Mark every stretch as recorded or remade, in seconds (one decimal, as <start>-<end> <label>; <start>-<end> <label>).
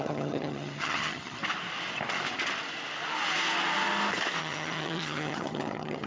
0.0-1.4 remade; 1.4-4.4 recorded; 4.4-6.1 remade